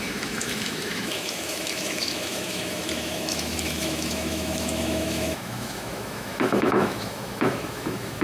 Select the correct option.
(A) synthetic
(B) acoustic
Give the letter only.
A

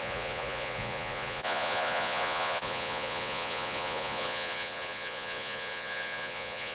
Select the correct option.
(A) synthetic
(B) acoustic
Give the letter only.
A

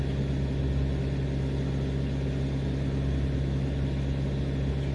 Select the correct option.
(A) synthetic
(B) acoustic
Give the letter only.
B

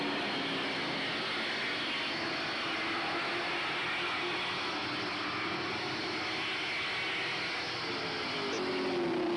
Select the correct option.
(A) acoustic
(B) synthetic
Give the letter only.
A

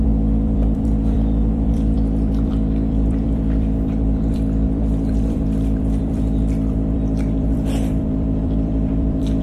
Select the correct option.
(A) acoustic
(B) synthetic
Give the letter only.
B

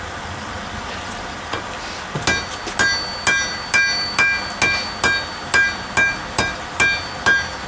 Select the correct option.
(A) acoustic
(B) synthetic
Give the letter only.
A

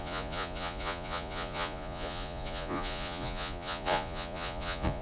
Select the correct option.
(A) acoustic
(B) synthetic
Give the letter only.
B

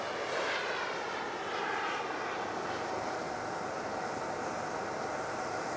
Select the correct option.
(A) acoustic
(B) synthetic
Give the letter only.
A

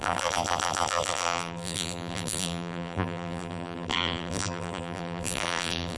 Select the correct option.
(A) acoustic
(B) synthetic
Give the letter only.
B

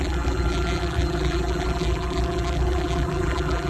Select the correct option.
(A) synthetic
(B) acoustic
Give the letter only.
A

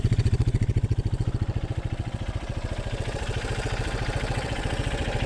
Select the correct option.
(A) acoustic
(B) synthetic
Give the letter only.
B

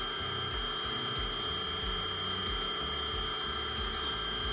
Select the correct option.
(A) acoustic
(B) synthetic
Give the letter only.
A